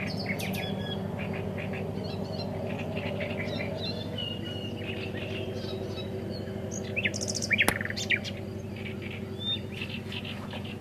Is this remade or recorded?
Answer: recorded